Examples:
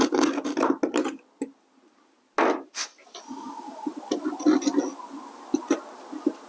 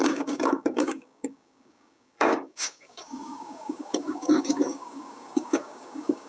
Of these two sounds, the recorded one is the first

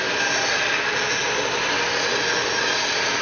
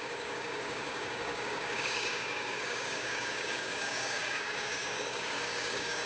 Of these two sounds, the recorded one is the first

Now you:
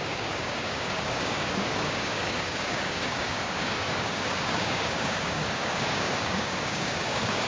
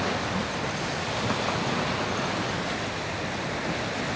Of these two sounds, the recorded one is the second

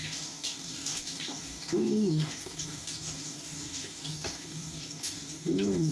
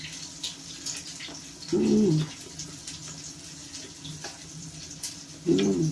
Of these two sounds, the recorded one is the second